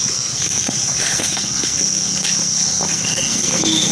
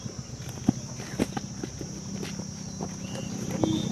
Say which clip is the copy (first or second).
first